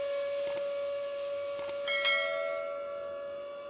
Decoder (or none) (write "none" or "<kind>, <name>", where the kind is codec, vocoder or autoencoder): none